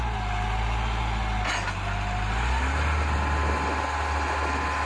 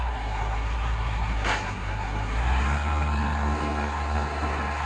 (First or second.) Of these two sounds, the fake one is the second